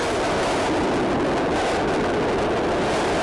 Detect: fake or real real